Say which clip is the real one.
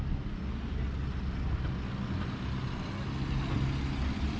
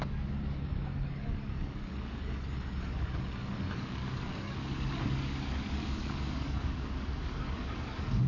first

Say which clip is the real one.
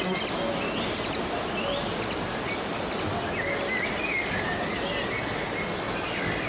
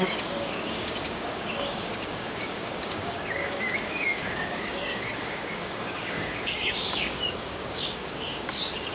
first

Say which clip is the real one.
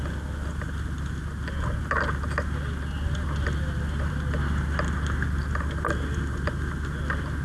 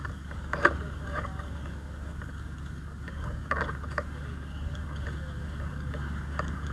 first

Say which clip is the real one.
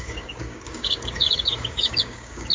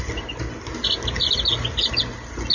second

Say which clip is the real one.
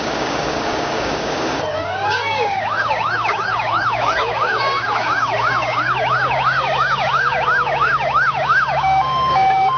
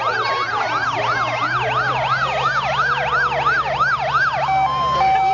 second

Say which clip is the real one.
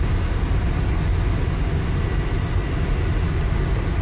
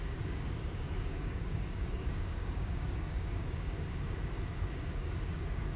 first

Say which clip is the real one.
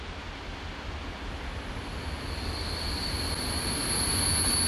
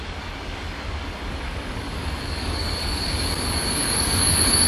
first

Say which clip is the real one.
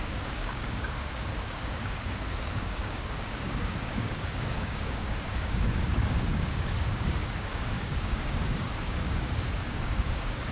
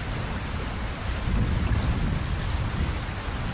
second